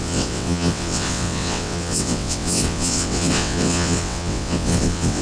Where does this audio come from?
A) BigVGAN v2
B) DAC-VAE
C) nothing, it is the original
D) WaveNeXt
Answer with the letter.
D